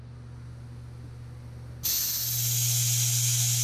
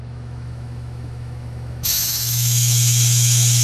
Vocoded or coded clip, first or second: second